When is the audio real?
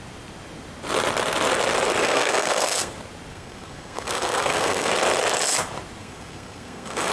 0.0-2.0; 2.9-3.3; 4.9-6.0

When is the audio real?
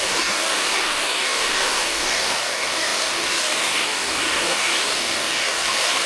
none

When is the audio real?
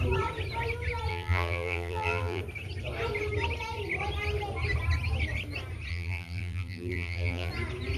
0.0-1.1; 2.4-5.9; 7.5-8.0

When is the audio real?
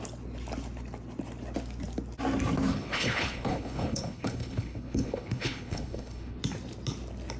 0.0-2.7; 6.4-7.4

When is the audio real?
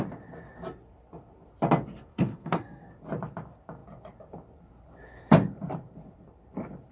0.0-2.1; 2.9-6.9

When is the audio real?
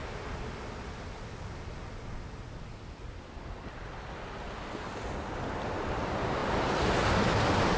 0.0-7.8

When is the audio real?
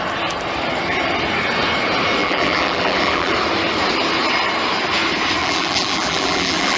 0.0-2.2; 3.3-5.4